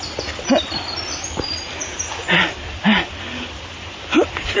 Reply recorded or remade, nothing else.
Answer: recorded